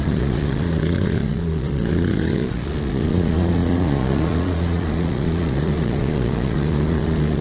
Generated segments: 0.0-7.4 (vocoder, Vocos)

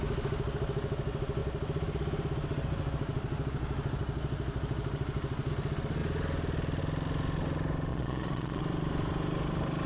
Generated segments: 7.9-8.6 (vocoder, Vocos)

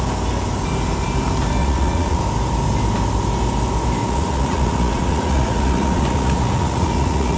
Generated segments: 1.6-2.2 (vocoder, Vocos); 4.0-7.4

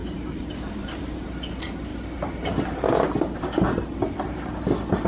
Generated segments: none

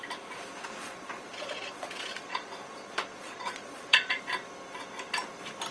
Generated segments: 0.8-4.2 (vocoder, Vocos)

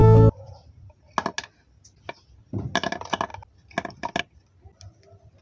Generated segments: none

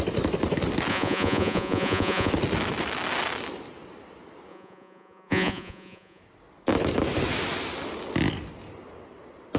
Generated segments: 0.9-2.3 (vocoder, Vocos); 4.5-6.2

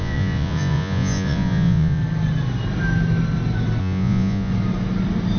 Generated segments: 0.0-2.0 (vocoder, Vocos); 3.8-4.5